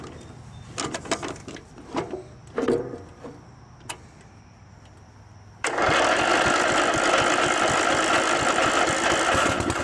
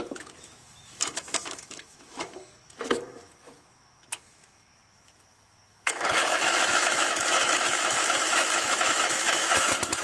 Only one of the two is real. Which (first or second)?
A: first